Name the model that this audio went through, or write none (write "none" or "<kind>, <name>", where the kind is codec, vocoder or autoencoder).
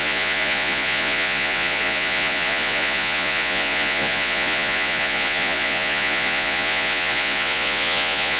vocoder, Vocos